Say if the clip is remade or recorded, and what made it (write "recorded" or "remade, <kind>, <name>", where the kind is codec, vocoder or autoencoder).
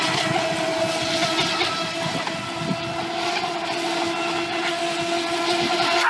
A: recorded